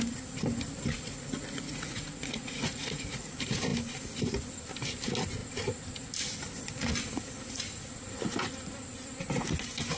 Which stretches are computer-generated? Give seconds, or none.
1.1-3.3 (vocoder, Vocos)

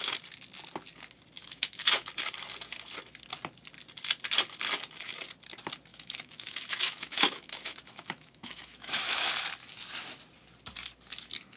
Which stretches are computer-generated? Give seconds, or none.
1.4-2.1 (autoencoder, DAC-VAE); 5.9-9.3

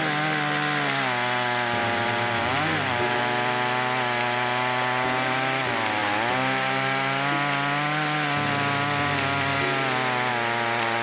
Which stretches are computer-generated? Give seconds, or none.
1.8-3.2 (vocoder, BigVGAN v2)

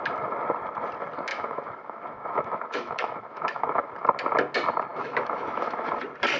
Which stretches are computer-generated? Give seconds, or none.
1.3-3.9 (autoencoder, DAC-VAE); 4.9-5.9